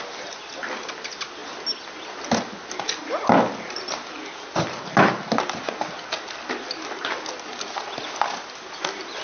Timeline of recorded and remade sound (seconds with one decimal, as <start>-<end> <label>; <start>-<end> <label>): 0.0-9.2 recorded